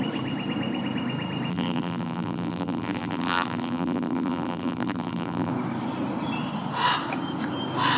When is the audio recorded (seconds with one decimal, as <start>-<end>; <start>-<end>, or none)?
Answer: 0.0-1.5; 5.5-8.0